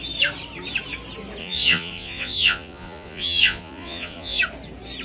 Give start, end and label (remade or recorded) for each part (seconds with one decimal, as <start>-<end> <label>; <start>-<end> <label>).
0.0-1.4 recorded; 1.4-4.4 remade; 4.4-5.0 recorded